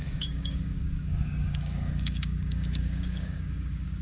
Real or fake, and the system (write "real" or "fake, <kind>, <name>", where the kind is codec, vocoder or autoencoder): fake, codec, DAC